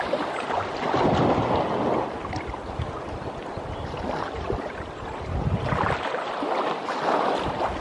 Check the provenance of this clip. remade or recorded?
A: recorded